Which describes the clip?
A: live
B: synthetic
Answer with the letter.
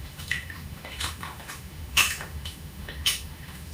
B